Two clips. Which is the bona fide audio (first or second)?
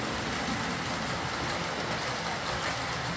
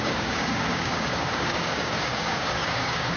first